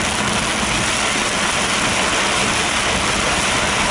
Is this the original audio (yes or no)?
yes